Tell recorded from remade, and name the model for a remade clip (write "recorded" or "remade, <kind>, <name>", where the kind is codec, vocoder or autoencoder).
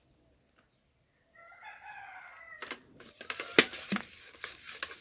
recorded